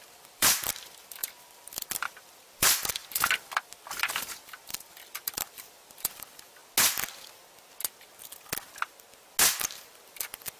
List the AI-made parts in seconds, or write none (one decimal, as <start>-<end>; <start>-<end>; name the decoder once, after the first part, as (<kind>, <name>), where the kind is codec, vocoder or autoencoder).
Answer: 0.0-6.6 (vocoder, BigVGAN v2); 9.6-10.6